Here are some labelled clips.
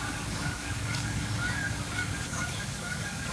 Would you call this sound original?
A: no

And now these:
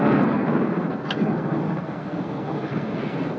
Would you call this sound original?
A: no